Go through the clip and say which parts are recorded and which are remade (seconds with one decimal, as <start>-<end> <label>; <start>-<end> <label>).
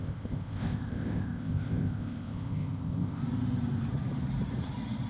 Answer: 0.0-3.2 remade; 3.2-5.1 recorded